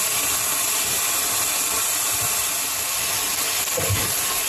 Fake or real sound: real